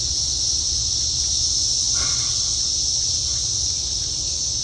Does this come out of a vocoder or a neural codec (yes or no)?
no